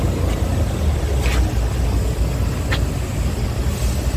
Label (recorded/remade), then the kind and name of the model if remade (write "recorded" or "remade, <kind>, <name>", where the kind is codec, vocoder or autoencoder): recorded